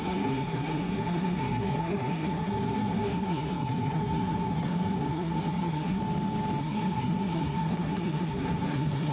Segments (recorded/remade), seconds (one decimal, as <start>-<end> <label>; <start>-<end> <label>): 0.0-6.0 remade; 6.0-6.6 recorded; 6.6-9.1 remade